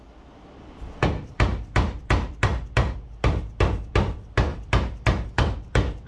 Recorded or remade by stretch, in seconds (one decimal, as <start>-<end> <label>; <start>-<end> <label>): 0.0-6.1 remade